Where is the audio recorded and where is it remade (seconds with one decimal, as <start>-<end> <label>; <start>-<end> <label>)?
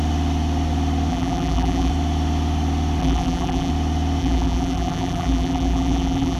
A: 0.0-1.1 recorded; 1.1-1.9 remade; 1.9-3.0 recorded; 3.0-3.7 remade; 3.7-4.2 recorded; 4.2-6.4 remade